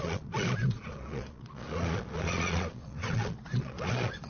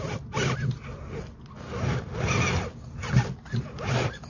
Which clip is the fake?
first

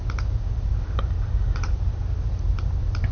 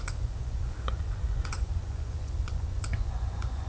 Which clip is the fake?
second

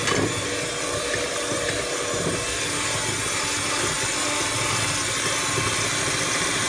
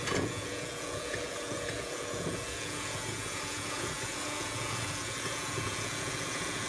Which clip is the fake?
second